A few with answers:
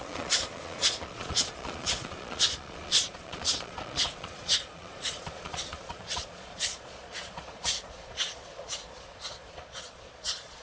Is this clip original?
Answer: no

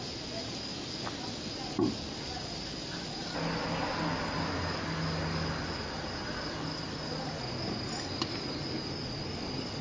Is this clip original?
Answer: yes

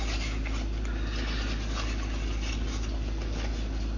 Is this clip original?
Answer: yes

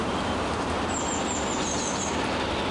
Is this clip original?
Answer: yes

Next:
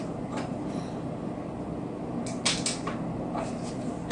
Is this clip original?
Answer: yes